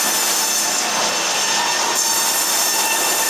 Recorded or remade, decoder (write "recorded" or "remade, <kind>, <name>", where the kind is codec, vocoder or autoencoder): recorded